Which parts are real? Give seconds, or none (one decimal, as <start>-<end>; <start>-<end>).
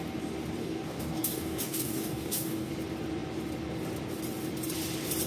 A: 0.0-0.6; 2.7-5.3